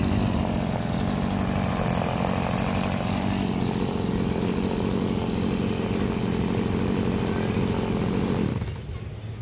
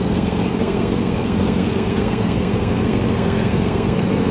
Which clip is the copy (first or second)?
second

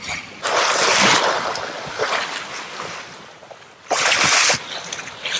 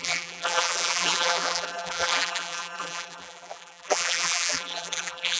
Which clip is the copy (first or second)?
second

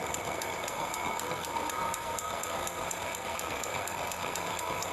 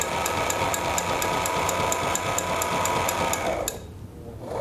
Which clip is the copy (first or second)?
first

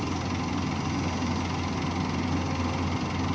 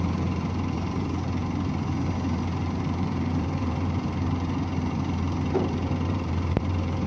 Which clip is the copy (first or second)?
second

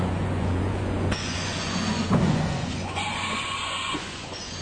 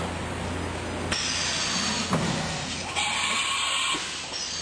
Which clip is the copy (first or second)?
first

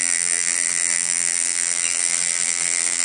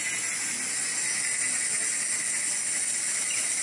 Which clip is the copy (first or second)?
first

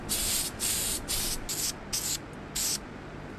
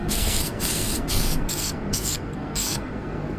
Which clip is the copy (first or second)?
second